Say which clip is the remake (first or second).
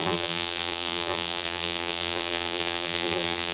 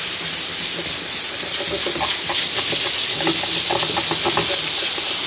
first